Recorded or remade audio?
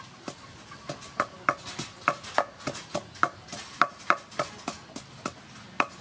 recorded